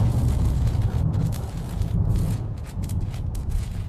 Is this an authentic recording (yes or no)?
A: no